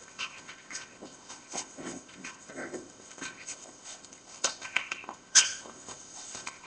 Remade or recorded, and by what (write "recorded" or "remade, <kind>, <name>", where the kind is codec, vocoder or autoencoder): remade, codec, ZipCodec